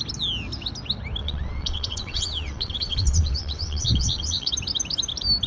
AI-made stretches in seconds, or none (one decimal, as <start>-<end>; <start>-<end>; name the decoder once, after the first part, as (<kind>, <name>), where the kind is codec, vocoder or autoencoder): 1.2-4.5 (vocoder, WaveNeXt)